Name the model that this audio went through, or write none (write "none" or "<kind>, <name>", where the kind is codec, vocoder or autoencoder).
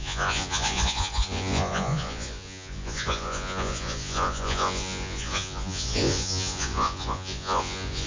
vocoder, Vocos